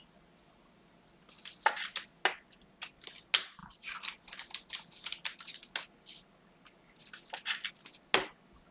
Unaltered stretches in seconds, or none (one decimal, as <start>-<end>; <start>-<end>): 0.0-8.7